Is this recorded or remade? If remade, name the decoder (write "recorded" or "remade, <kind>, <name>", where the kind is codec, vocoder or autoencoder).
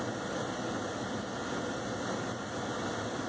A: recorded